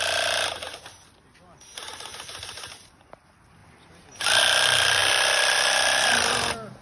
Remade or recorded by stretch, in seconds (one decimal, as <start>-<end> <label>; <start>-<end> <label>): 0.0-3.6 recorded; 3.6-4.4 remade; 4.4-6.8 recorded